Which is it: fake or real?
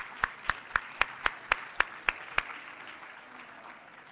real